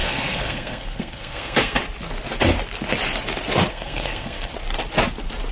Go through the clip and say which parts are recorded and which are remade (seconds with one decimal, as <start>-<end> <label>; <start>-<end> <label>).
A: 0.0-1.8 remade; 1.8-3.7 recorded; 3.7-4.5 remade; 4.5-5.5 recorded